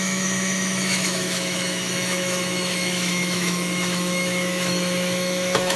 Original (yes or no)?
no